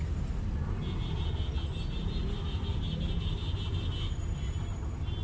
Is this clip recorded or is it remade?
recorded